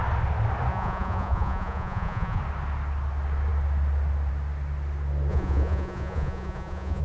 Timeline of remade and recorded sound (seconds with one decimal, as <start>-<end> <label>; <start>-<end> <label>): 0.0-0.7 recorded; 0.7-2.4 remade; 2.4-5.3 recorded; 5.3-7.0 remade